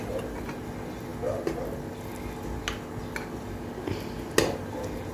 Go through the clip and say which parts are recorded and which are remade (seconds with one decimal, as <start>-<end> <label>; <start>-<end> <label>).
0.0-5.1 recorded